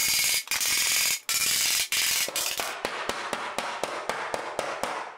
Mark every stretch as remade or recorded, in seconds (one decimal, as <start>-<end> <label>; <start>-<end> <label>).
0.0-1.4 recorded; 1.4-3.3 remade; 3.3-5.2 recorded